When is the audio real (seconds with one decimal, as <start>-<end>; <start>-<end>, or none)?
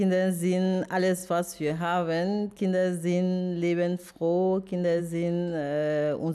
0.0-6.3